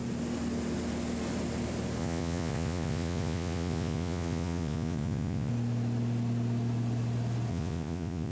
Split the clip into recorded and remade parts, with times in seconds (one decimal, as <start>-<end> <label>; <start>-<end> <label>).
0.0-2.0 recorded; 2.0-5.5 remade; 5.5-7.5 recorded; 7.5-8.3 remade